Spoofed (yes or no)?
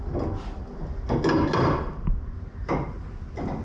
no